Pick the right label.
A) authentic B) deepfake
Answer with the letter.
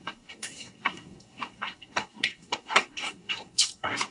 B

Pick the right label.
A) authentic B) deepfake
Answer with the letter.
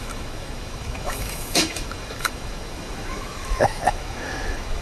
B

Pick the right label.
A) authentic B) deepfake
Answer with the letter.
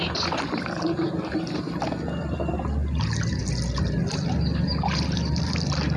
A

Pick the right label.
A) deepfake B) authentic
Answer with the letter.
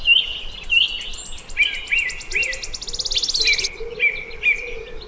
B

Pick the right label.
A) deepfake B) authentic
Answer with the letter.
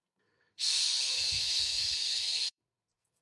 A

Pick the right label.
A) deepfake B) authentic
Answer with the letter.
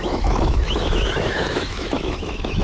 A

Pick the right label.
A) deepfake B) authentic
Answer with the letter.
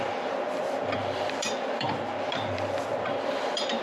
A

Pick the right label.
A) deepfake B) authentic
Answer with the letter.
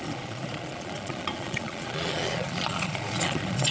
A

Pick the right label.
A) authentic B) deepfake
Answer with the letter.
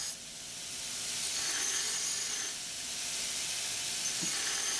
A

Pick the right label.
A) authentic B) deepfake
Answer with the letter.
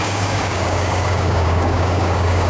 B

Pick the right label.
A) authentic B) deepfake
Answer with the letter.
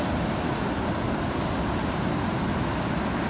A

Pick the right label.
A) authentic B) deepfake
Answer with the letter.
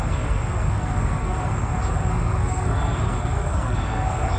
B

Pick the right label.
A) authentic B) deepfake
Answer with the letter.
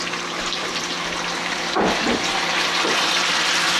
B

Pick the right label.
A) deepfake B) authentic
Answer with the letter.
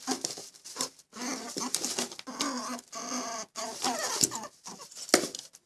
B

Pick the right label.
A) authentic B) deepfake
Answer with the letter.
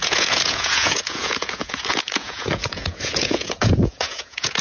B